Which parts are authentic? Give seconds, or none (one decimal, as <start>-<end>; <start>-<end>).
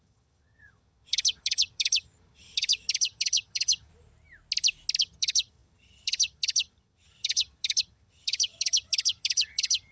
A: 3.9-5.0